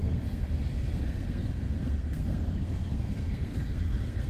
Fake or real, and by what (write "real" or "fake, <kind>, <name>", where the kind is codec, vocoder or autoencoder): fake, codec, SNAC